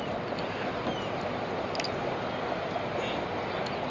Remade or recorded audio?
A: recorded